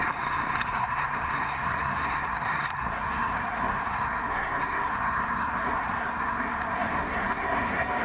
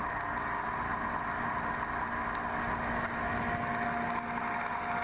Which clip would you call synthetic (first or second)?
first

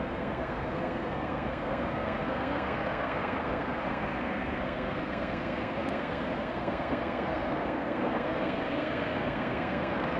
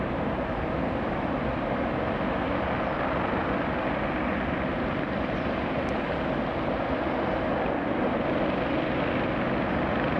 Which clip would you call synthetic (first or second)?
first